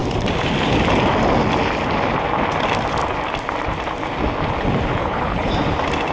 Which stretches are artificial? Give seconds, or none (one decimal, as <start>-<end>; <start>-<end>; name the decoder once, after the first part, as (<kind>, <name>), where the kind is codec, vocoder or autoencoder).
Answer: 5.0-5.5 (codec, HILCodec)